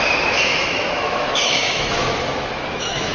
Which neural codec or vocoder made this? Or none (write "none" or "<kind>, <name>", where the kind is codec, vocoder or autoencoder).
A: autoencoder, DAC-VAE